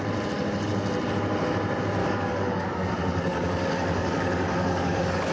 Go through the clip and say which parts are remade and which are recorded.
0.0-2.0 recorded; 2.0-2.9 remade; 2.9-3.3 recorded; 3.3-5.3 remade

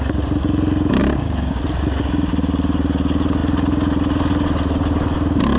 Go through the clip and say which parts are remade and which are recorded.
0.0-1.0 recorded; 1.0-1.6 remade; 1.6-5.6 recorded

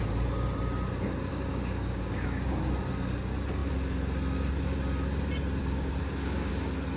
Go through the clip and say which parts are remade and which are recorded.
0.0-1.3 recorded; 1.3-2.6 remade; 2.6-5.6 recorded; 5.6-6.5 remade; 6.5-7.0 recorded

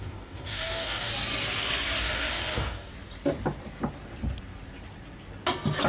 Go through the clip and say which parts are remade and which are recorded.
0.0-1.1 remade; 1.1-2.0 recorded; 2.0-2.9 remade; 2.9-5.9 recorded

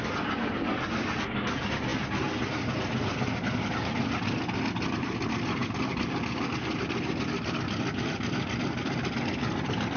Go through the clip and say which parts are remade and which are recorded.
0.0-10.0 recorded